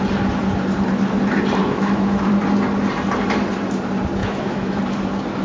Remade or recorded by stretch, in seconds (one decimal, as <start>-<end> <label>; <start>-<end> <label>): 0.0-1.6 recorded; 1.6-2.3 remade; 2.3-4.2 recorded; 4.2-4.8 remade; 4.8-5.4 recorded